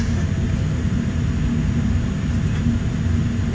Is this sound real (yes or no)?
yes